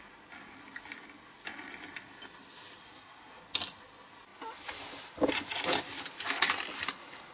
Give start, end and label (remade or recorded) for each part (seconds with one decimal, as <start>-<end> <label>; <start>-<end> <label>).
0.0-2.8 recorded; 2.8-3.4 remade; 3.4-7.3 recorded